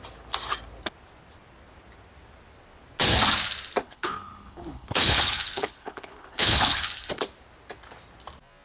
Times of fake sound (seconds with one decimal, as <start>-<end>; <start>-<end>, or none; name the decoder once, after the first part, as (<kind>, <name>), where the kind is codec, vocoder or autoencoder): 3.8-7.2 (codec, HILCodec)